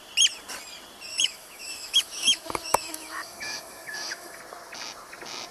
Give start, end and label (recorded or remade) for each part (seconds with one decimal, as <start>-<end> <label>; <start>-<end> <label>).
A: 0.0-1.1 recorded; 1.1-4.4 remade; 4.4-5.5 recorded